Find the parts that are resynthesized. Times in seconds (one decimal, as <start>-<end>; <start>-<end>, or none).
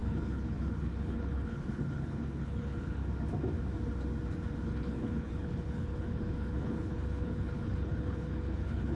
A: 0.0-3.0; 4.6-9.0